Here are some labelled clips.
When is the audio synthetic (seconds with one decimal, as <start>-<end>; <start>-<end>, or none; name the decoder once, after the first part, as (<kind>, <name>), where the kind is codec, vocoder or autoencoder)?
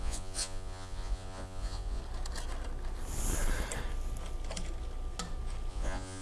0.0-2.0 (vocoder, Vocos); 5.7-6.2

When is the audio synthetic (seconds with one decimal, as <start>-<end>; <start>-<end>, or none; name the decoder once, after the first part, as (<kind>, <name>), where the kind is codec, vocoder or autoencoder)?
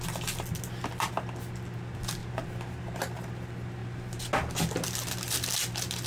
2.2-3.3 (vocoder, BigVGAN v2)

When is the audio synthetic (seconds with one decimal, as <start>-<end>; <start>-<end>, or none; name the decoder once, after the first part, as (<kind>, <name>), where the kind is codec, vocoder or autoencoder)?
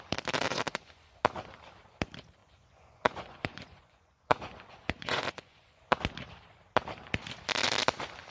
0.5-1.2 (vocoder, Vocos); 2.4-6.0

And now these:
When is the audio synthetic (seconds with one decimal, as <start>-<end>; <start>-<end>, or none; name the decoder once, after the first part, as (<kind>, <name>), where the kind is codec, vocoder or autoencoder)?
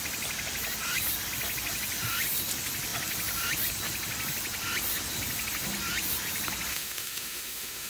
6.7-7.9 (autoencoder, DAC-VAE)